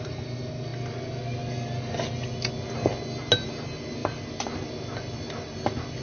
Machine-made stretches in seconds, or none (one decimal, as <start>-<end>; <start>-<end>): none